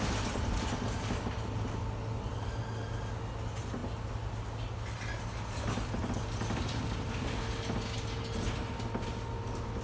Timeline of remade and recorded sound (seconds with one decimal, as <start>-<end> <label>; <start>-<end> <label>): 0.0-9.8 recorded